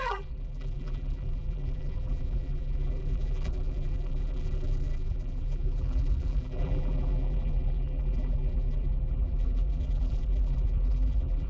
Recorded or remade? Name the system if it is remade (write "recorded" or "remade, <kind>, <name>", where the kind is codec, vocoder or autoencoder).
remade, vocoder, BigVGAN v2